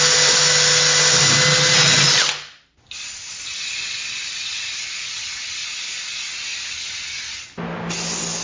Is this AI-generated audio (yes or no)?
no